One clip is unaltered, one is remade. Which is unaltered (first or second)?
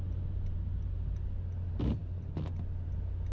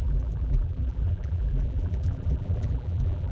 first